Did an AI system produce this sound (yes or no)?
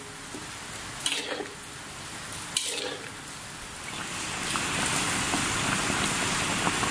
no